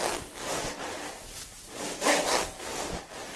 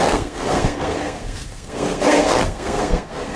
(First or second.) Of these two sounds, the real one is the first